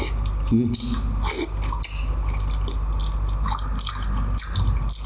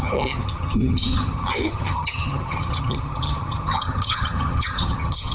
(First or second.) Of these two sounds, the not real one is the second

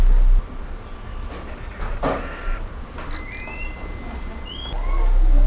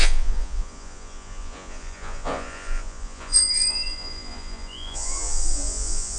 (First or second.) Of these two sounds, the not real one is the second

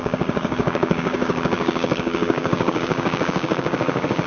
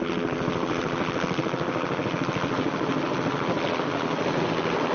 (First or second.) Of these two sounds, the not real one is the first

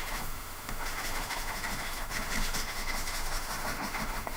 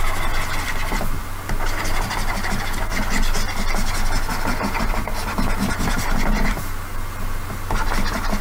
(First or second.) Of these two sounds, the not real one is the first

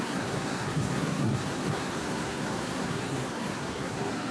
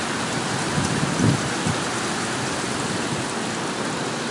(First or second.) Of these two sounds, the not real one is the first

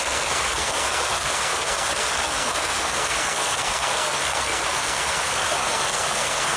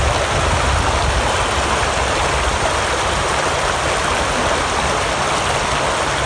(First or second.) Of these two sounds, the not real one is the first